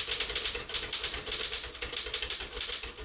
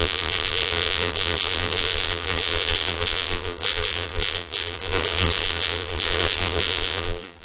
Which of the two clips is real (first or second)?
first